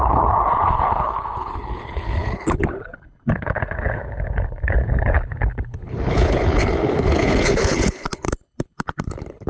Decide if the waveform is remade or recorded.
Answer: remade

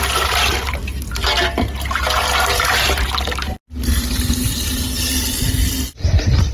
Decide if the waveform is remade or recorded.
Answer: recorded